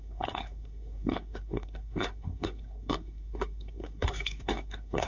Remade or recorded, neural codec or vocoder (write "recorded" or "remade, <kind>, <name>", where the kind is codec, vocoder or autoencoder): remade, codec, SNAC